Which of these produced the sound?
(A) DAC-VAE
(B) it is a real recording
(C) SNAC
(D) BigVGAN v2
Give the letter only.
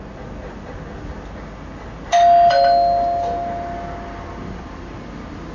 B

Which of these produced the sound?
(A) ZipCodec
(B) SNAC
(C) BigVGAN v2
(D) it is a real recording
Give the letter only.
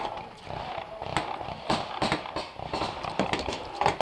D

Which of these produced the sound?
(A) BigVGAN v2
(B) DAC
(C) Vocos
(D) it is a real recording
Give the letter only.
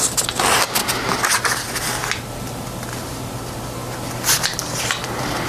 D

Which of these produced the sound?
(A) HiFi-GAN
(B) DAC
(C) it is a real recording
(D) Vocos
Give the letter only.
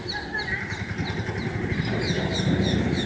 C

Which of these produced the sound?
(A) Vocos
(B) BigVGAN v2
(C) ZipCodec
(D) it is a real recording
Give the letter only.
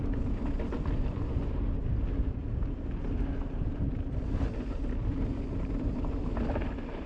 D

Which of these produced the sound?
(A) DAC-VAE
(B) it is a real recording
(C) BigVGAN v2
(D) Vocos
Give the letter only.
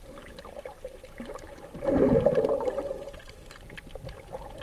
B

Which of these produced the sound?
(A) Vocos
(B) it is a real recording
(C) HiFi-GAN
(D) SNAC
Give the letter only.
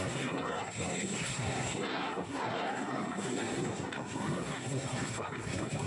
D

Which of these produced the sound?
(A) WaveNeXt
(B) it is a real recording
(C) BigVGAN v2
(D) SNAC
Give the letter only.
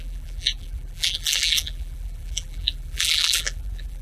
C